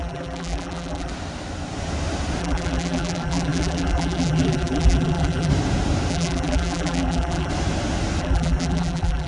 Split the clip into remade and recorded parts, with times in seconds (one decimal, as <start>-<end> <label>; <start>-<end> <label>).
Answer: 0.0-1.1 remade; 1.1-2.4 recorded; 2.4-5.5 remade; 5.5-6.1 recorded; 6.1-7.5 remade; 7.5-8.2 recorded; 8.2-9.3 remade